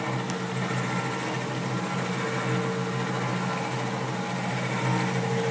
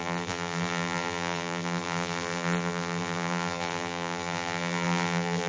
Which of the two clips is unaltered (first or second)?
first